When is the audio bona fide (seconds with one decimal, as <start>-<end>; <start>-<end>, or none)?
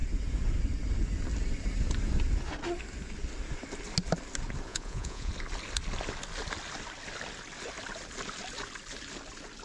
0.0-4.7; 5.3-9.6